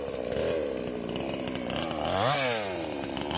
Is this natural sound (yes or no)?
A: yes